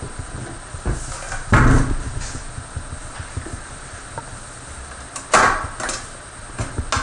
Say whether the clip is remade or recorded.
recorded